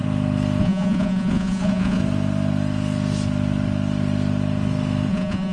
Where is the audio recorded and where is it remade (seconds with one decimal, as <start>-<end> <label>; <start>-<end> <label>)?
0.0-0.6 recorded; 0.6-2.0 remade; 2.0-5.1 recorded; 5.1-5.5 remade